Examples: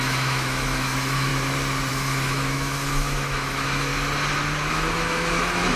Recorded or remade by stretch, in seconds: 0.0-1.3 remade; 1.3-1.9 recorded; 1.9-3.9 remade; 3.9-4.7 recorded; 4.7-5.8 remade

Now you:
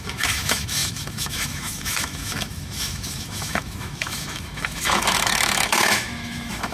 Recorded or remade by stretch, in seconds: 0.0-6.7 remade

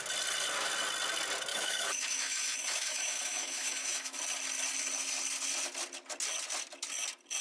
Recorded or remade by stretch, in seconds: 0.0-1.5 recorded; 1.5-4.2 remade; 4.2-7.4 recorded

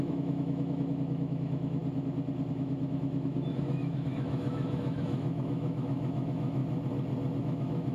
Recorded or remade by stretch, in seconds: 0.0-1.8 remade; 1.8-2.5 recorded; 2.5-6.6 remade; 6.6-7.4 recorded; 7.4-7.9 remade

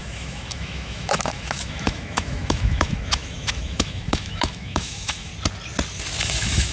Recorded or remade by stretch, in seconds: 0.0-5.3 remade; 5.3-6.2 recorded; 6.2-6.7 remade